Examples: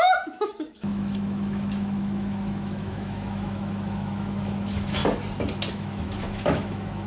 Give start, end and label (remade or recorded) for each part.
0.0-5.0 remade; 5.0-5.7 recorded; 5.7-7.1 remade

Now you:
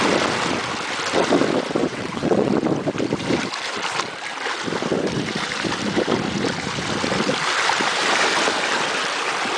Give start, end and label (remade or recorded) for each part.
0.0-1.8 recorded; 1.8-2.5 remade; 2.5-9.6 recorded